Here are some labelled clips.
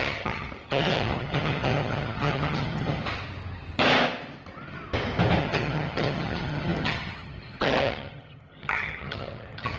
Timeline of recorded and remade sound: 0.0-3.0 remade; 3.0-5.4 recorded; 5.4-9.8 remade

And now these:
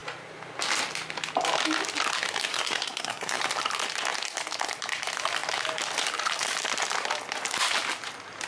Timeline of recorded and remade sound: 0.0-2.5 recorded; 2.5-3.4 remade; 3.4-8.5 recorded

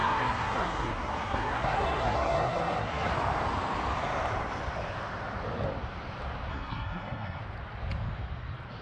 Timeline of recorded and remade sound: 0.0-3.1 remade; 3.1-6.5 recorded; 6.5-7.4 remade; 7.4-8.8 recorded

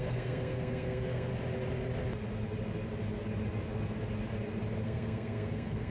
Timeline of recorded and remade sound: 0.0-1.3 remade; 1.3-4.8 recorded; 4.8-5.9 remade

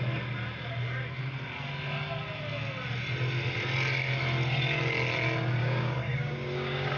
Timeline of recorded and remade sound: 0.0-5.6 recorded; 5.6-7.0 remade

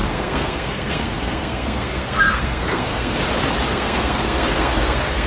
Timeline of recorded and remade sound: 0.0-3.2 remade; 3.2-3.7 recorded; 3.7-5.3 remade